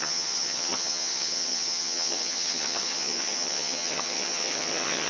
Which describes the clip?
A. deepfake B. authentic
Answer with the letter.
A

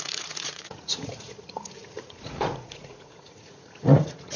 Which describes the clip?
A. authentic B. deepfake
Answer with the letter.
B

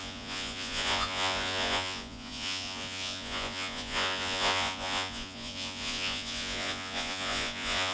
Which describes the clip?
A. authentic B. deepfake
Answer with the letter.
B